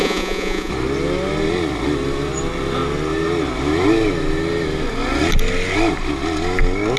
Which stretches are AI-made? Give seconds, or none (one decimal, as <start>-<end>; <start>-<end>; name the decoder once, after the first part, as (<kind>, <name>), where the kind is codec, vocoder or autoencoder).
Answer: 0.0-0.7 (vocoder, Vocos)